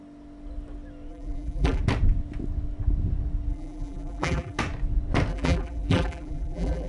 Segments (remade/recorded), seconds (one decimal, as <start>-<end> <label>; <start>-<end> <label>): 0.0-1.1 recorded; 1.1-1.8 remade; 1.8-3.5 recorded; 3.5-4.6 remade; 4.6-5.3 recorded; 5.3-6.9 remade